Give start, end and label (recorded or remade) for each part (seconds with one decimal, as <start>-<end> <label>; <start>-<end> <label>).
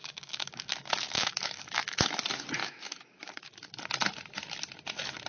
0.0-2.1 remade; 2.1-2.6 recorded; 2.6-3.7 remade; 3.7-5.3 recorded